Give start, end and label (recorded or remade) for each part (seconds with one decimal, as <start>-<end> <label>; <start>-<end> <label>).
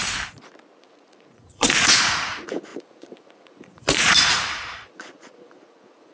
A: 0.0-0.8 recorded; 0.8-6.1 remade